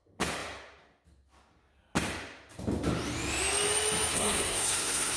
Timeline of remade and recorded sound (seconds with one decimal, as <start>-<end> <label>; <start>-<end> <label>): 0.0-4.1 recorded; 4.1-5.2 remade